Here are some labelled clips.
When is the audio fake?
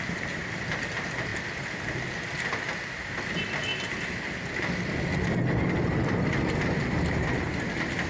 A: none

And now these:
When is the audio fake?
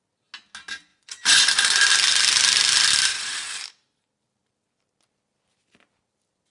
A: 0.9-1.4 (vocoder, Vocos)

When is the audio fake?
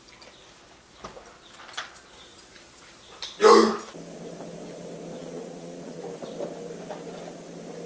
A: 5.2-6.0 (vocoder, Vocos)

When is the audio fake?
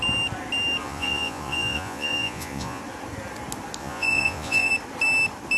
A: 0.8-2.8 (vocoder, Vocos); 3.8-4.7